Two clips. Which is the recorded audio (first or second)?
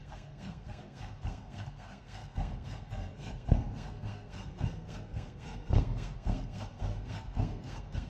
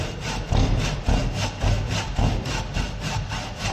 second